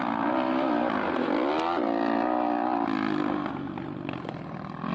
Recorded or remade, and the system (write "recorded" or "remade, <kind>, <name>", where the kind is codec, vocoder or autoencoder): recorded